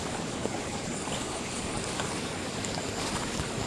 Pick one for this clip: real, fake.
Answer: fake